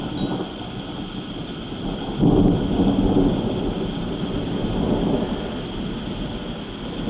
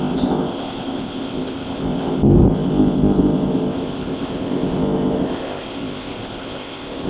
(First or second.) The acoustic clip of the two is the first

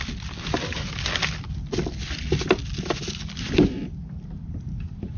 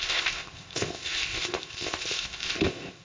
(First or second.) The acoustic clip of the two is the first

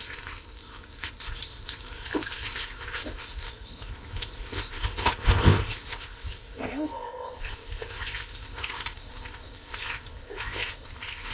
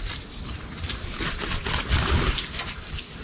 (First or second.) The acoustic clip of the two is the second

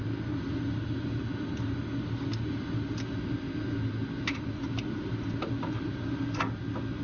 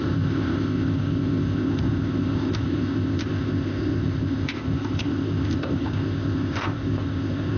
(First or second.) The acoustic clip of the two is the first